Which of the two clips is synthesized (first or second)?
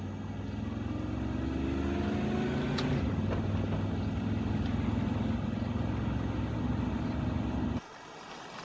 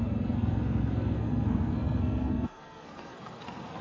second